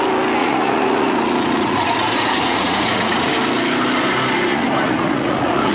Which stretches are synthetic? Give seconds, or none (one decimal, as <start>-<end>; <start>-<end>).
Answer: 0.4-3.3; 4.5-5.7